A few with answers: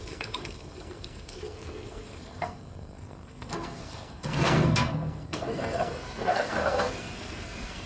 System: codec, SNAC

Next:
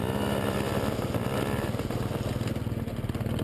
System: none